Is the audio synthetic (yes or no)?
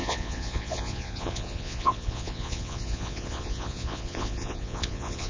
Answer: yes